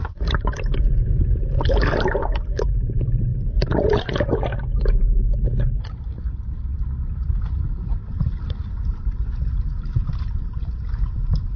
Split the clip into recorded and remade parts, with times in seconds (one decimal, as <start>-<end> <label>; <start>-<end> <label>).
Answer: 0.0-11.6 remade